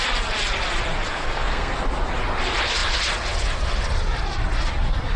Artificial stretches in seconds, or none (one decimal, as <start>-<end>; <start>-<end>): 1.1-1.7